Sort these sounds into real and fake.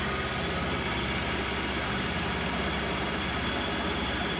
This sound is real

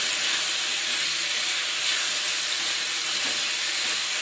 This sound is real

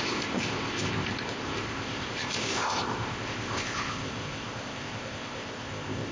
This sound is fake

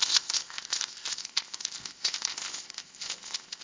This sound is fake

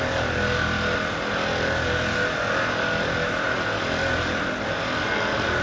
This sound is real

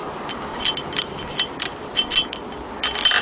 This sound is real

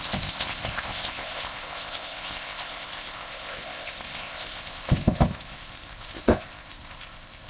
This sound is fake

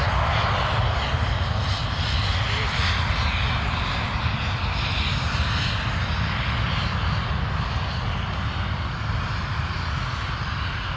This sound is real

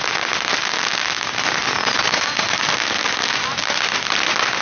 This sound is real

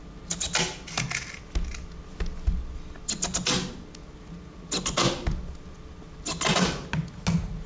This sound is real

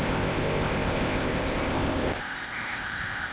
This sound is fake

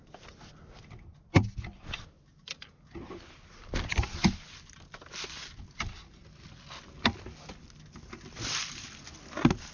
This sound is real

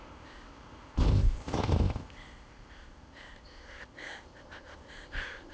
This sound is fake